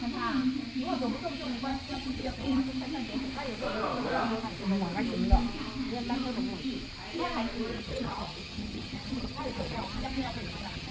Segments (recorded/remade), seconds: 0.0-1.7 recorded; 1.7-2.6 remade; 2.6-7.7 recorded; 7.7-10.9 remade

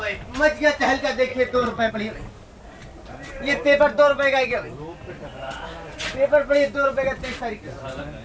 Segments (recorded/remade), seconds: 0.0-1.3 recorded; 1.3-1.9 remade; 1.9-8.2 recorded

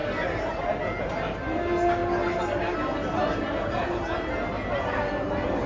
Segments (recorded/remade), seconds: 0.0-5.7 recorded

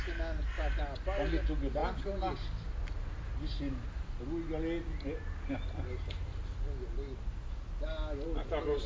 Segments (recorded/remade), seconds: 0.0-8.9 recorded

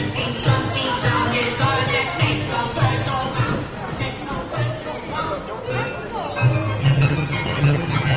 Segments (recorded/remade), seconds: 0.0-6.8 recorded; 6.8-8.2 remade

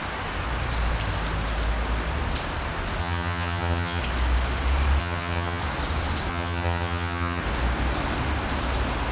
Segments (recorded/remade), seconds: 0.0-3.0 recorded; 3.0-4.0 remade; 4.0-5.0 recorded; 5.0-5.6 remade; 5.6-6.3 recorded; 6.3-7.4 remade; 7.4-9.1 recorded

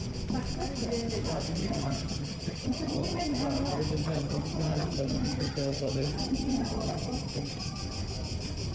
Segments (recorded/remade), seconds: 0.0-1.6 recorded; 1.6-3.2 remade; 3.2-4.0 recorded; 4.0-7.8 remade; 7.8-8.7 recorded

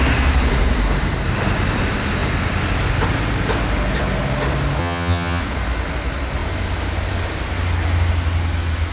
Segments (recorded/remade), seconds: 0.0-4.8 recorded; 4.8-5.4 remade; 5.4-8.9 recorded